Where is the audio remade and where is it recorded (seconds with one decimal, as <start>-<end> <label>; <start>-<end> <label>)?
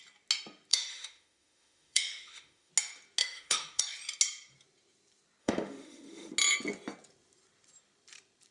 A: 0.0-0.7 recorded; 0.7-2.7 remade; 2.7-3.2 recorded; 3.2-3.8 remade; 3.8-5.4 recorded; 5.4-6.3 remade; 6.3-8.5 recorded